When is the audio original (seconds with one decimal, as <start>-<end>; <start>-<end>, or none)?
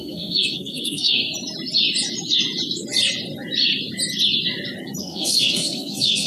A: 1.2-5.0